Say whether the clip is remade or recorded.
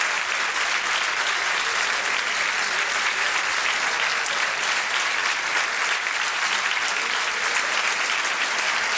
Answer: recorded